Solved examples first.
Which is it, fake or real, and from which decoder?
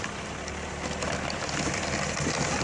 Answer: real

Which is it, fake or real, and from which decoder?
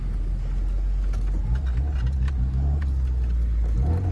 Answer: real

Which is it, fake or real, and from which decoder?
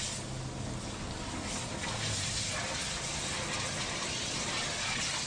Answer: real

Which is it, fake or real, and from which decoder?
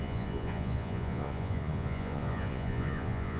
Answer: fake, vocoder, Vocos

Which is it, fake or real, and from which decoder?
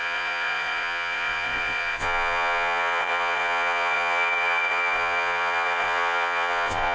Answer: fake, vocoder, Vocos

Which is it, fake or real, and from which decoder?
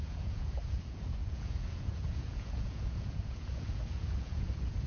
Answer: fake, vocoder, Vocos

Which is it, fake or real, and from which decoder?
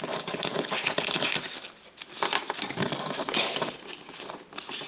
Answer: real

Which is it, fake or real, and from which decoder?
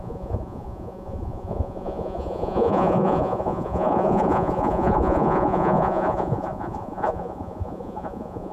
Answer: fake, vocoder, Vocos